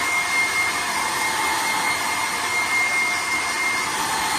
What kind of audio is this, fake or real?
real